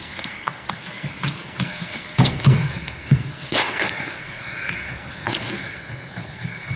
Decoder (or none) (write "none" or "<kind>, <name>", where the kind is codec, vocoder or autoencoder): codec, SNAC